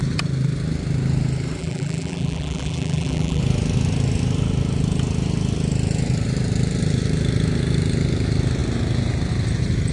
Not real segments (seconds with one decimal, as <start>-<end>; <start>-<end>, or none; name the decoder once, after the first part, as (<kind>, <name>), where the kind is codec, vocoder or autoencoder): 1.6-3.4 (vocoder, BigVGAN v2)